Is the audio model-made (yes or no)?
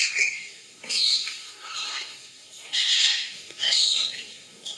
yes